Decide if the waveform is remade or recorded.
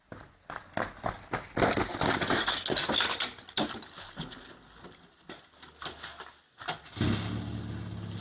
recorded